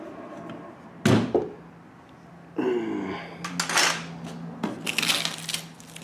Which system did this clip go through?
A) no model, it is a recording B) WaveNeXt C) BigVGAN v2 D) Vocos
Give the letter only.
A